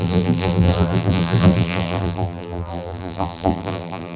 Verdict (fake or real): fake